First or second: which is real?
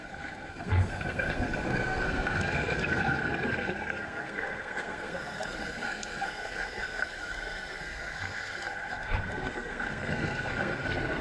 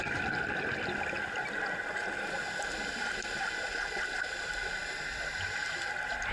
second